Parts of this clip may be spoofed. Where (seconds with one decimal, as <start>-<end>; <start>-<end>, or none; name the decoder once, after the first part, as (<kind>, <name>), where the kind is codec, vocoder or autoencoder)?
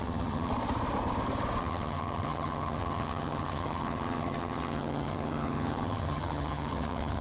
0.0-0.5 (vocoder, HiFi-GAN); 1.6-7.2